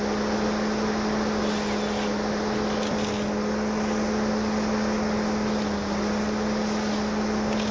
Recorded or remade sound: recorded